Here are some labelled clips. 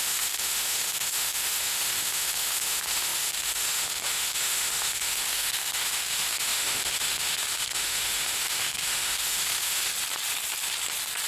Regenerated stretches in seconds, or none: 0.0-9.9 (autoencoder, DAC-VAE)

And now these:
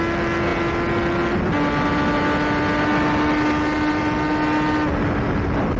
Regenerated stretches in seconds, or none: none

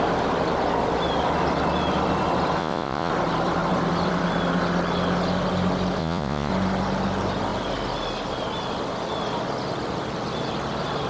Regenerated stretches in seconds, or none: 2.6-3.1 (vocoder, Vocos); 6.0-6.5

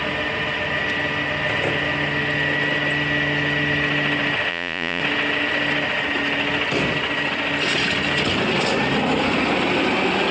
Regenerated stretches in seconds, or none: 4.5-5.0 (vocoder, Vocos)

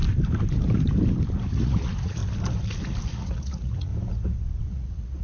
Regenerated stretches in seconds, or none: 1.5-2.2 (vocoder, Vocos); 3.1-3.9; 4.7-5.2

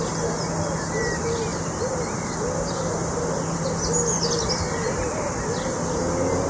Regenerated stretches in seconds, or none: none